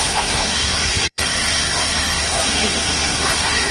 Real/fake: fake